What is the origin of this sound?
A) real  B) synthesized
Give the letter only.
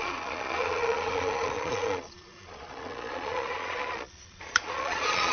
B